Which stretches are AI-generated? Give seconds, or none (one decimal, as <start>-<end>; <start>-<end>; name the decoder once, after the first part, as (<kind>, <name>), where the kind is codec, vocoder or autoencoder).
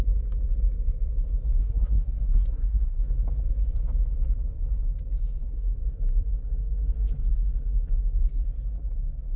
1.6-3.0 (codec, SNAC)